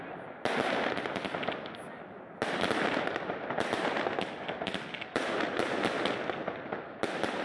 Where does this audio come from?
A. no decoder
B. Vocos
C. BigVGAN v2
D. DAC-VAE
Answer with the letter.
A